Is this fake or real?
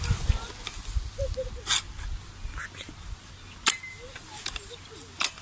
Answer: real